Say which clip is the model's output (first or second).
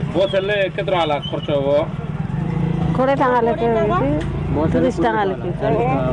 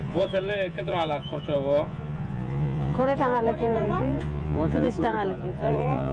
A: second